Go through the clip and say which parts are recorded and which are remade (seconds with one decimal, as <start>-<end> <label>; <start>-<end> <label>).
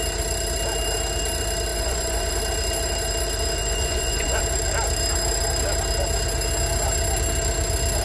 0.0-1.7 recorded; 1.7-2.3 remade; 2.3-3.6 recorded; 3.6-4.4 remade; 4.4-8.0 recorded